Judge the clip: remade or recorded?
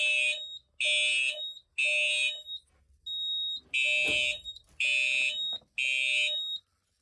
recorded